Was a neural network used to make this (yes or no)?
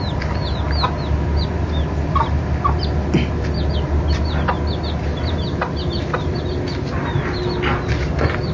no